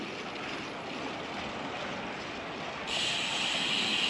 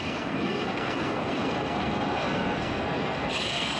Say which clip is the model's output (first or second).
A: second